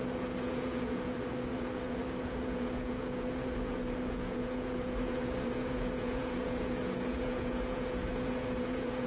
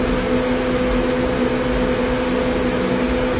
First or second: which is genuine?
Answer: second